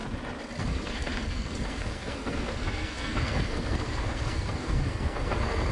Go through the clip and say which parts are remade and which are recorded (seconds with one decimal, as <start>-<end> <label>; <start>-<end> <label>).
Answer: 0.0-0.6 recorded; 0.6-5.7 remade

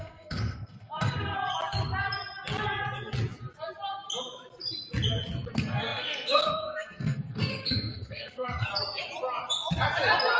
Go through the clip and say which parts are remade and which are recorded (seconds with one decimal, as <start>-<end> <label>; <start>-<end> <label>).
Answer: 0.0-1.4 remade; 1.4-5.5 recorded; 5.5-8.7 remade; 8.7-10.4 recorded

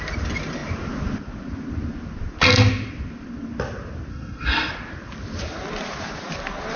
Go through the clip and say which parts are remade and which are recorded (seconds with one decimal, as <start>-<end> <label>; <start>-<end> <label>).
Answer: 0.0-4.1 recorded; 4.1-4.7 remade; 4.7-6.8 recorded

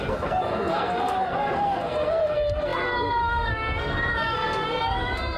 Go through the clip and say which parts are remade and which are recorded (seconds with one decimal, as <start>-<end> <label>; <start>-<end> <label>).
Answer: 0.0-5.4 remade